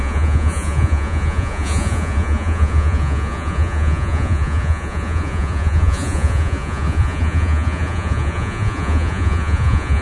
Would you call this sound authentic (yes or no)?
no